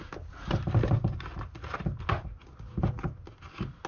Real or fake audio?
real